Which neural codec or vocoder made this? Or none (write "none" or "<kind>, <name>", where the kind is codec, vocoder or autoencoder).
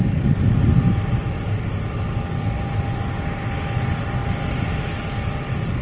none